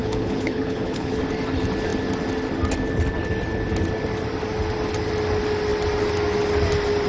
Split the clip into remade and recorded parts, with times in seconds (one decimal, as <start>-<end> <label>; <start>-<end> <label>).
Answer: 0.0-1.2 remade; 1.2-7.1 recorded